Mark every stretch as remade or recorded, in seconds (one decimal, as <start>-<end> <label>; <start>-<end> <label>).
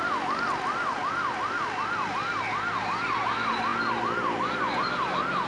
0.0-5.5 recorded